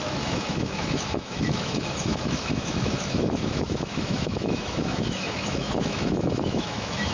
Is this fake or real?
fake